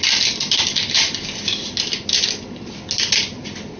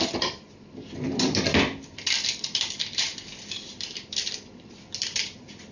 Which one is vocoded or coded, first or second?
second